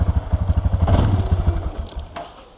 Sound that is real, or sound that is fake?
real